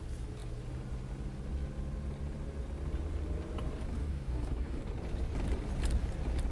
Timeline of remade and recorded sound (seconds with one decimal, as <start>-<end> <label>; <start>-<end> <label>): 0.0-4.0 recorded; 4.0-4.8 remade; 4.8-6.5 recorded